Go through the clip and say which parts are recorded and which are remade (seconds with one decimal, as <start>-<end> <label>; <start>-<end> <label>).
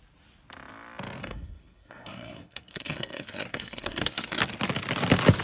0.0-1.2 recorded; 1.2-4.4 remade; 4.4-5.4 recorded